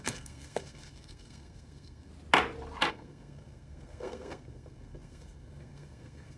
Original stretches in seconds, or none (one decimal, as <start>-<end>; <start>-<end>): 2.1-2.9